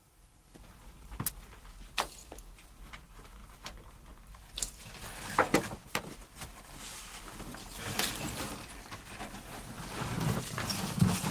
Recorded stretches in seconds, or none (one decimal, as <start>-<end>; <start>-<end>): 0.0-11.3